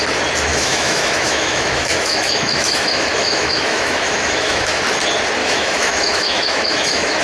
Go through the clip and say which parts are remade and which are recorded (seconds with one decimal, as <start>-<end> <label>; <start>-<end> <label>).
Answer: 0.0-0.5 recorded; 0.5-4.8 remade; 4.8-5.4 recorded; 5.4-7.2 remade